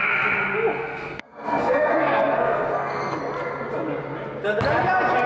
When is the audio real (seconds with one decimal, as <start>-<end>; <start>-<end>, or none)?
0.0-0.7; 3.2-5.3